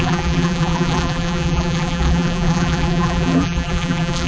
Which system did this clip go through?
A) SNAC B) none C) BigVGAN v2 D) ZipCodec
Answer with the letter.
C